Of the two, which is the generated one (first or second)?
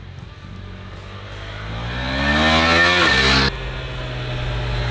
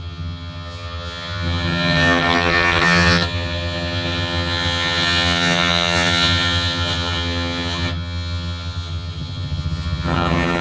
second